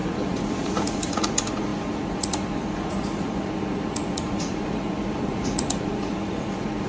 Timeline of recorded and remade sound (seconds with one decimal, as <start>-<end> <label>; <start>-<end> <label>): 0.0-6.9 remade